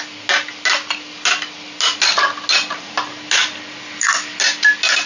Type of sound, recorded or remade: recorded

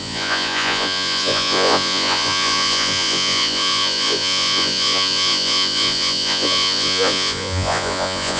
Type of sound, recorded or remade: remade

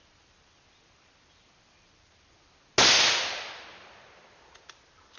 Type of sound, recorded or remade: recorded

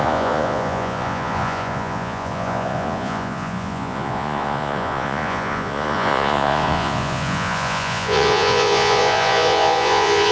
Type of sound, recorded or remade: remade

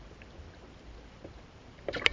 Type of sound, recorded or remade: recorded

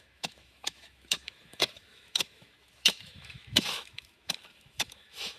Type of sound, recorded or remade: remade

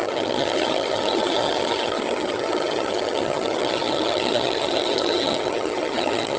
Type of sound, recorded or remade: remade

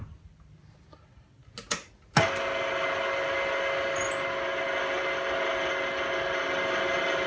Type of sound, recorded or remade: recorded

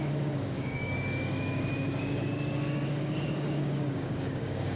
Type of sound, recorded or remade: remade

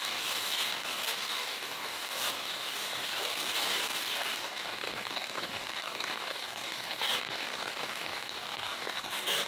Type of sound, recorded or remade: remade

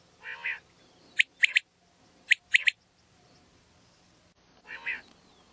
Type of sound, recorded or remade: recorded